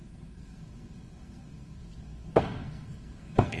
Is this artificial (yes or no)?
yes